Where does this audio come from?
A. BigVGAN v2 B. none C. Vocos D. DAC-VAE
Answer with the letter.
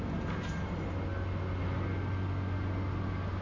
B